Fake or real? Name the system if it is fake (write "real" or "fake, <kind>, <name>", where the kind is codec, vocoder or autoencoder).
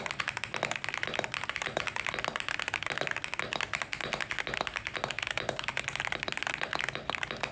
real